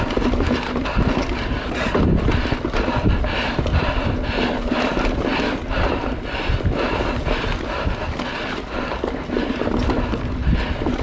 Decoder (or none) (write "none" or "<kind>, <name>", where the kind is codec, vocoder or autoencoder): none